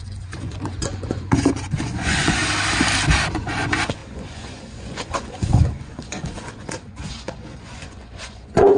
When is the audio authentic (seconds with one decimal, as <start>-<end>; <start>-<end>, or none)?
2.4-3.3